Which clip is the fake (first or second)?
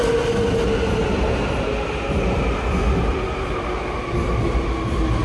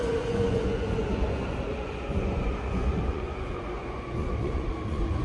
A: second